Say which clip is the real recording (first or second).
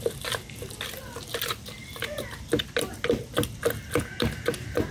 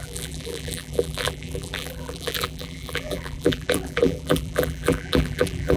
first